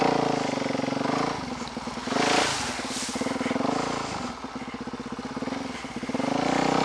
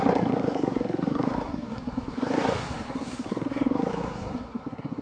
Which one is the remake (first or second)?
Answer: second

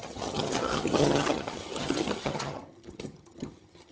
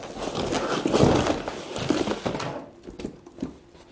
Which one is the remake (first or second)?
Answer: first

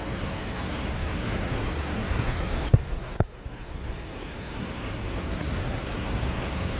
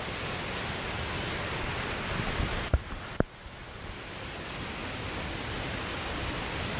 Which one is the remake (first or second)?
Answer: first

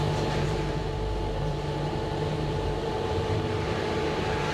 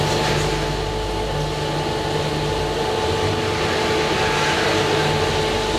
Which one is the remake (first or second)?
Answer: first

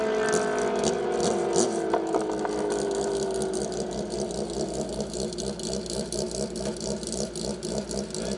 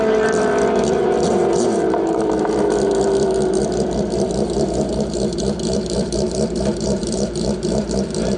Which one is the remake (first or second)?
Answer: second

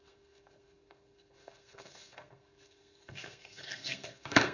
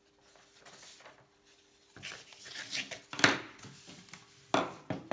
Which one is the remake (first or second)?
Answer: first